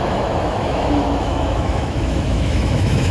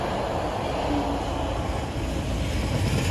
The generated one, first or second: first